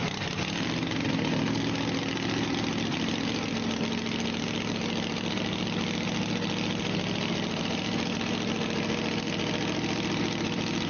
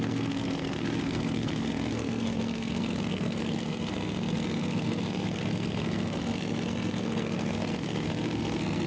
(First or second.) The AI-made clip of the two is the second